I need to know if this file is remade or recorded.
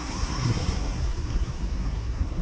remade